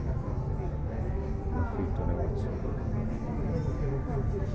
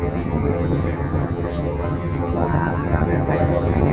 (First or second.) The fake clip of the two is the second